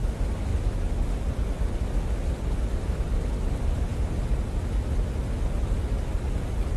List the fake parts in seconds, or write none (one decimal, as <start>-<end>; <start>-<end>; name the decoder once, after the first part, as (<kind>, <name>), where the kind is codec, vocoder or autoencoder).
0.0-6.8 (vocoder, BigVGAN v2)

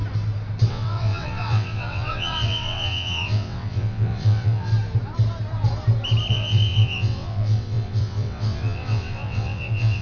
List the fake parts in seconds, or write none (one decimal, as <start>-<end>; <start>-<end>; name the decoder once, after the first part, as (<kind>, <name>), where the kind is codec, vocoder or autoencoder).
0.7-4.7 (vocoder, WaveNeXt); 6.3-10.0